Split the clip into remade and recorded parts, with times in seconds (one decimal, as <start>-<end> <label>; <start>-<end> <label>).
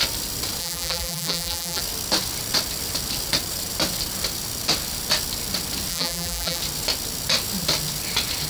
0.0-0.6 recorded; 0.6-1.8 remade; 1.8-5.9 recorded; 5.9-6.6 remade; 6.6-8.5 recorded